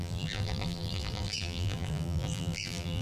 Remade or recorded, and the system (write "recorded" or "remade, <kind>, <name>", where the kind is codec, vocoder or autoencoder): remade, vocoder, BigVGAN v2